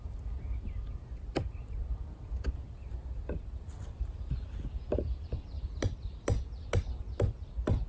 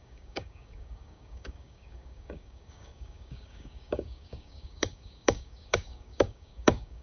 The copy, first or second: second